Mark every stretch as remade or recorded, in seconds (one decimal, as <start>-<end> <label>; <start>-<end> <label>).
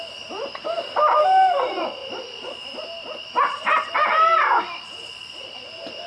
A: 0.0-6.1 recorded